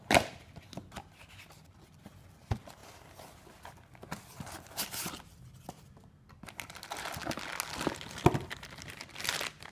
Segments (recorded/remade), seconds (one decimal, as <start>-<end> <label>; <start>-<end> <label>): 0.0-9.7 recorded